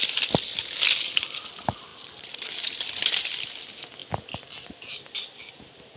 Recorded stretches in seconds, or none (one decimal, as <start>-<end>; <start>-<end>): 0.0-1.9; 3.3-6.0